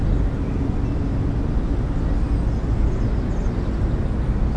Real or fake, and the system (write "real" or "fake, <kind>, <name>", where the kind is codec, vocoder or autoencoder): real